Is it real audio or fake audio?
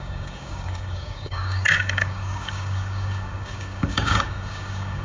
fake